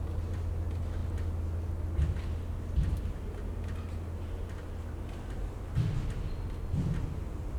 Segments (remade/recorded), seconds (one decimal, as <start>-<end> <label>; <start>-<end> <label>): 0.0-7.6 recorded